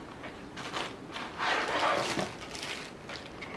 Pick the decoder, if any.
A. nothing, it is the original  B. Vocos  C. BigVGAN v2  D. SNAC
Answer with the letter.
A